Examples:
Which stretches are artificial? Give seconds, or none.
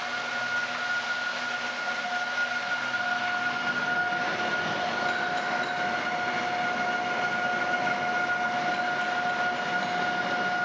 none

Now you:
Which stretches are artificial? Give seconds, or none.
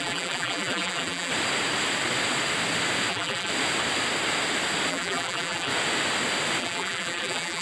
0.0-1.3 (vocoder, BigVGAN v2); 3.1-3.5; 4.9-5.7; 6.6-7.6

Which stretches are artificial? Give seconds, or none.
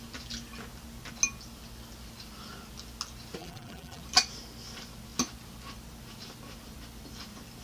3.4-4.0 (vocoder, BigVGAN v2)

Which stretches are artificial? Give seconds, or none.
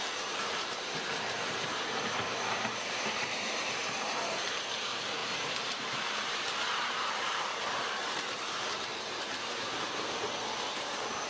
0.0-11.3 (vocoder, BigVGAN v2)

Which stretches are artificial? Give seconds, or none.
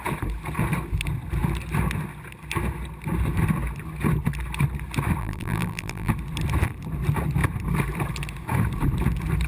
5.2-6.1 (vocoder, BigVGAN v2)